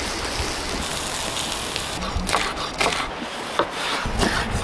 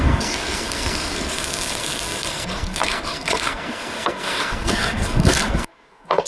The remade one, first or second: second